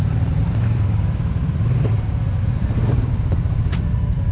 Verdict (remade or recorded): remade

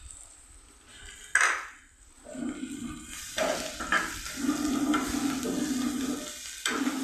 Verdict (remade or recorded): recorded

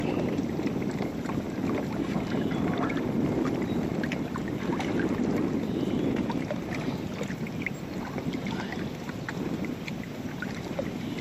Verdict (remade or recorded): recorded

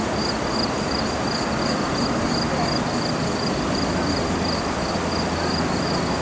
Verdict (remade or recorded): recorded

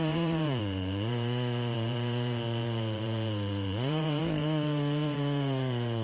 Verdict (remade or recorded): remade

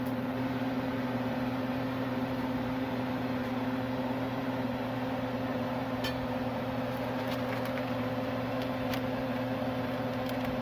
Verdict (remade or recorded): remade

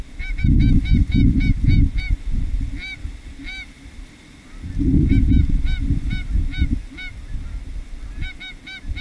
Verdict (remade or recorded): recorded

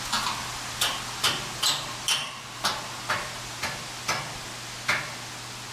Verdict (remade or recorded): recorded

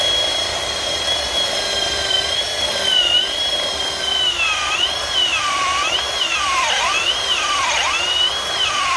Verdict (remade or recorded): remade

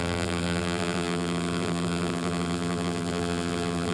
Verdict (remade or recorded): remade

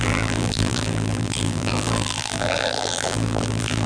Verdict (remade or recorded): remade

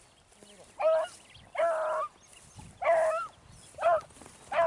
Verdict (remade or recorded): recorded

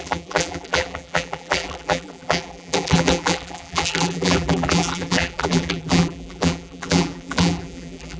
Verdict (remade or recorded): remade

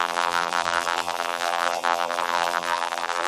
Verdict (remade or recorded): remade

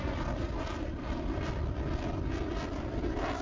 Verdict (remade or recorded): recorded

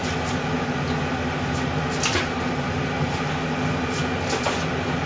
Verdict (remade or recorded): recorded